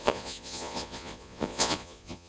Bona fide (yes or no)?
no